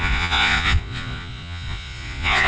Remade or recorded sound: remade